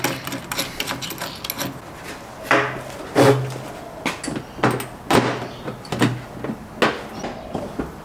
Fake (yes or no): no